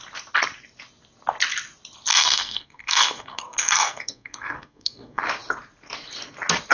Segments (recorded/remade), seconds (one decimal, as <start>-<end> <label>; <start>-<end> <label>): 0.0-2.1 recorded; 2.1-5.2 remade; 5.2-6.7 recorded